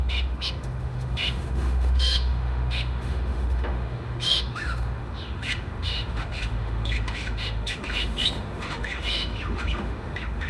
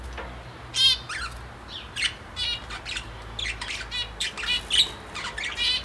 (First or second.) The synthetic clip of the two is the first